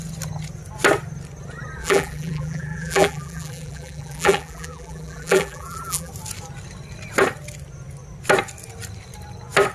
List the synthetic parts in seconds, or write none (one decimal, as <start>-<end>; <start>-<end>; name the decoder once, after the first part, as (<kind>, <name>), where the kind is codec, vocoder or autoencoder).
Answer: 1.8-6.1 (vocoder, BigVGAN v2)